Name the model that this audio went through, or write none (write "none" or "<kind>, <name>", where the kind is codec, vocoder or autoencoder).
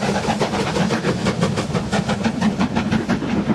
none